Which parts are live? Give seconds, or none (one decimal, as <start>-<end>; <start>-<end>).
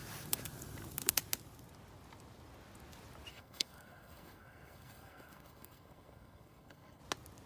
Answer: 0.0-3.3; 7.0-7.5